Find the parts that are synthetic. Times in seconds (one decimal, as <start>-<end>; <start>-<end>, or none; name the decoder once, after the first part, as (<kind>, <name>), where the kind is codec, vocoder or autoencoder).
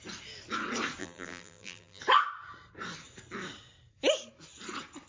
1.0-2.0 (vocoder, BigVGAN v2)